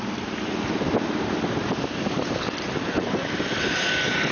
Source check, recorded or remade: remade